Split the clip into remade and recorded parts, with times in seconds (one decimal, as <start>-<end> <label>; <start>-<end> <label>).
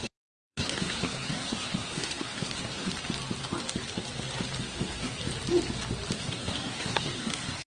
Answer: 0.0-2.9 remade; 2.9-4.6 recorded; 4.6-5.2 remade; 5.2-6.2 recorded; 6.2-7.7 remade